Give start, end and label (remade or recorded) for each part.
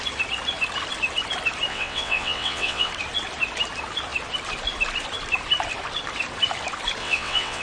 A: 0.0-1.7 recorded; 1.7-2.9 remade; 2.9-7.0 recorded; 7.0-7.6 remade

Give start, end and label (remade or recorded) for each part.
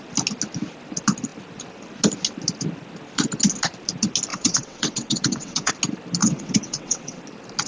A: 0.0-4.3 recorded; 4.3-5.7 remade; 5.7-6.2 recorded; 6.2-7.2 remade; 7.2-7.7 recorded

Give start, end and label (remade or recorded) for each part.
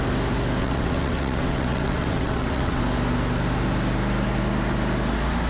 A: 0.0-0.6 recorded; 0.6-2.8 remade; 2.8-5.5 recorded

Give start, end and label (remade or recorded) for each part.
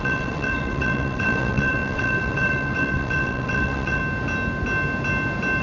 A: 0.0-4.0 remade; 4.0-5.6 recorded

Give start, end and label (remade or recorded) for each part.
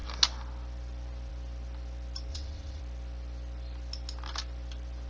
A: 0.0-2.3 recorded; 2.3-2.8 remade; 2.8-5.1 recorded